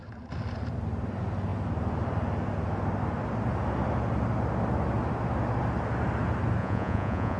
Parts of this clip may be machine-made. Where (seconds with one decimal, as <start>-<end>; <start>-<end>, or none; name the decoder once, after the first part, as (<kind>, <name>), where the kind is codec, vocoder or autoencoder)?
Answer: 6.6-7.4 (vocoder, Vocos)